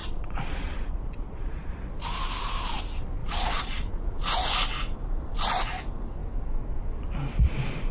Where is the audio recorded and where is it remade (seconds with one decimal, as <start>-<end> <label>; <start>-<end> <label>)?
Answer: 0.0-1.7 remade; 1.7-3.2 recorded; 3.2-4.0 remade; 4.0-7.9 recorded